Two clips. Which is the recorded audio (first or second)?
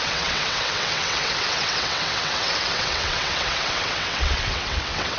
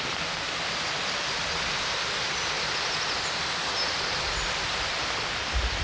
second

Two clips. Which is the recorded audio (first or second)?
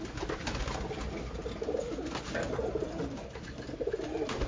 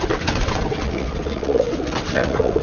first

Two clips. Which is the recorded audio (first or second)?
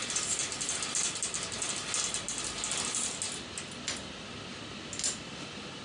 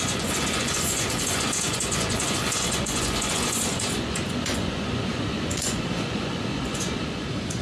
first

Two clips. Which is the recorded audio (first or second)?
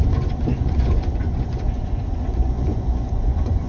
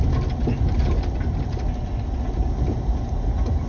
second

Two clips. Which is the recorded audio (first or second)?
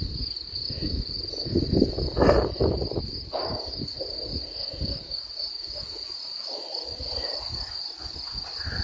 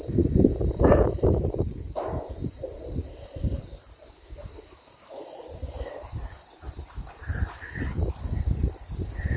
first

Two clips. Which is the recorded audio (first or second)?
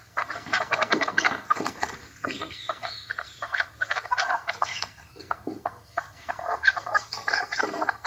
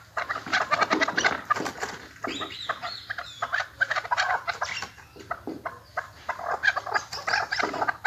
second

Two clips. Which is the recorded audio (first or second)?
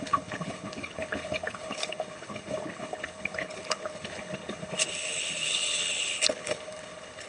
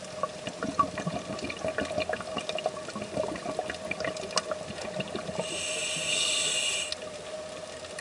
second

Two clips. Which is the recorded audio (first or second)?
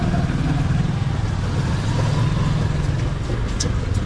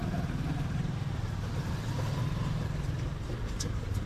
first